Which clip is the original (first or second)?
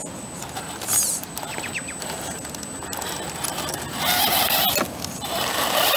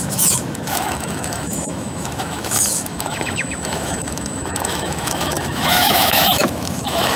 first